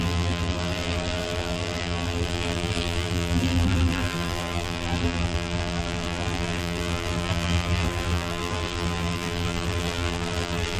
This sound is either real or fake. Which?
fake